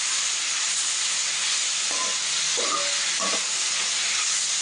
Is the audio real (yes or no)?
yes